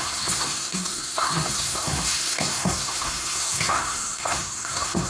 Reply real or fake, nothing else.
fake